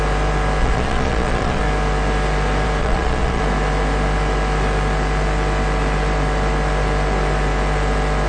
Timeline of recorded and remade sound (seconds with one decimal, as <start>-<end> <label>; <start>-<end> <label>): 0.0-0.6 recorded; 0.6-1.6 remade; 1.6-2.8 recorded; 2.8-3.4 remade; 3.4-8.3 recorded